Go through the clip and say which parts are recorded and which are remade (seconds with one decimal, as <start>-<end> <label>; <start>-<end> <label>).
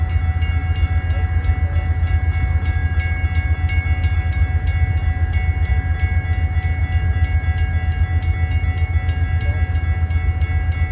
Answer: 0.0-10.9 recorded